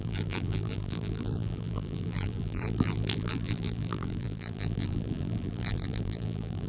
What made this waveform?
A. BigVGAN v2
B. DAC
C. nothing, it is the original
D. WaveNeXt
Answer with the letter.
A